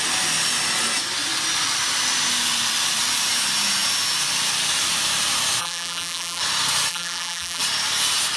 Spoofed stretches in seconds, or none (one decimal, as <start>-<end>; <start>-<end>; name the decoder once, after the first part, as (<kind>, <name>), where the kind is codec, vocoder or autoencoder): 5.6-6.4 (vocoder, BigVGAN v2); 6.9-7.6